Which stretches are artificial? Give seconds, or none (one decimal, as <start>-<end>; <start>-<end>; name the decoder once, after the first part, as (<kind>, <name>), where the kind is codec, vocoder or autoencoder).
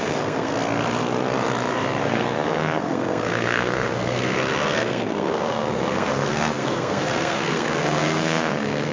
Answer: 0.0-0.5 (codec, SNAC); 2.0-8.9